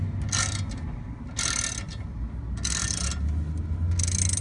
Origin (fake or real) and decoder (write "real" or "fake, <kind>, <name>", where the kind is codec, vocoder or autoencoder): real